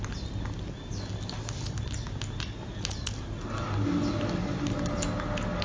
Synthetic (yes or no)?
no